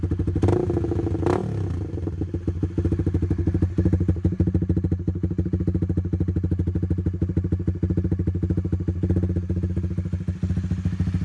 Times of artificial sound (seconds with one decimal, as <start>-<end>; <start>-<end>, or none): none